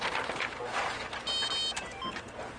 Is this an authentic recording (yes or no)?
yes